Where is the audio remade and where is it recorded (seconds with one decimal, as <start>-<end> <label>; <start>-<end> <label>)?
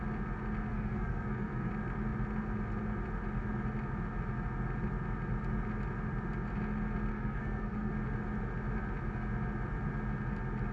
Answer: 0.0-0.7 recorded; 0.7-1.7 remade; 1.7-7.1 recorded; 7.1-7.9 remade; 7.9-10.7 recorded